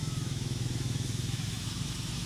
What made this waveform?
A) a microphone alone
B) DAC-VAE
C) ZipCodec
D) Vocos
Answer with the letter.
B